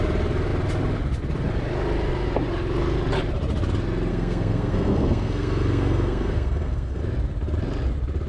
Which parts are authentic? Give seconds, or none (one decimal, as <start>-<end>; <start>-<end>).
0.0-4.1; 7.0-8.3